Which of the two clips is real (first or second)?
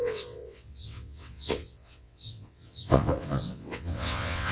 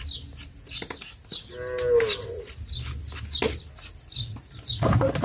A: second